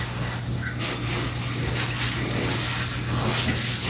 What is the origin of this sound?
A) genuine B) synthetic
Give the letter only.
A